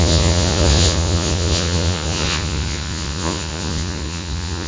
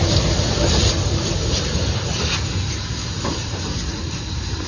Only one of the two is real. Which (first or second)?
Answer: second